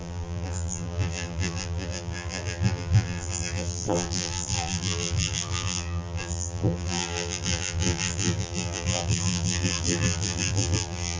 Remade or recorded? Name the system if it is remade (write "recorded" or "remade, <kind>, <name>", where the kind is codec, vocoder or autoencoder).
remade, vocoder, BigVGAN v2